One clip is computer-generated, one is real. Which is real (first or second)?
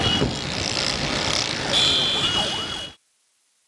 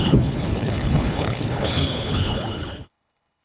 first